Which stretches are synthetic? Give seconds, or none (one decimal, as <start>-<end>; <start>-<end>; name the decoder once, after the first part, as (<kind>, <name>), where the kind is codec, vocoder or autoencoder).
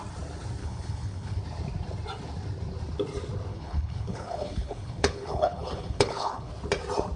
0.6-1.4 (codec, HILCodec); 3.5-6.5